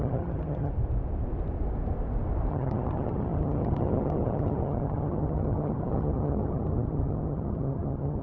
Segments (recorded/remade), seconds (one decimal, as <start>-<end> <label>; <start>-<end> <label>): 0.0-0.7 remade; 0.7-2.5 recorded; 2.5-8.2 remade